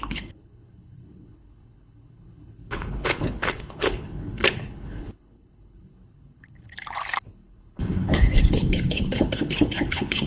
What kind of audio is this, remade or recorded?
remade